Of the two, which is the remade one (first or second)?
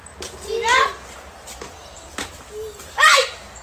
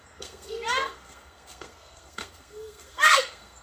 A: second